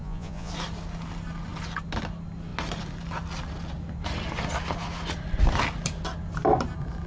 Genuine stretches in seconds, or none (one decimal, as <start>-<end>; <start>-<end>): 0.5-7.1